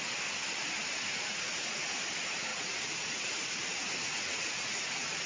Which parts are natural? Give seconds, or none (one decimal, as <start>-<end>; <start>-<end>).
0.0-1.1; 1.9-2.5; 3.2-4.1